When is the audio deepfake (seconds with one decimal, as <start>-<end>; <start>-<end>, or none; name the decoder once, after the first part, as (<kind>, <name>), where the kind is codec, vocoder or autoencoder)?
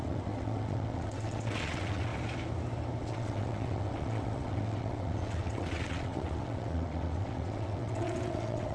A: 0.0-2.1 (vocoder, WaveNeXt); 3.0-8.7